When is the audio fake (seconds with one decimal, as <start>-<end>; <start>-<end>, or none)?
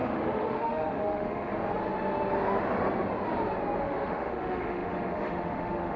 0.0-1.5; 3.8-6.0